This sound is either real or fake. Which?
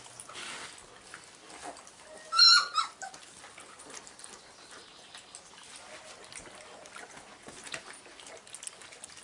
real